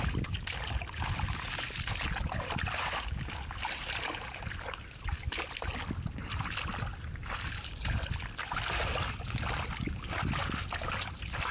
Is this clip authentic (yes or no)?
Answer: yes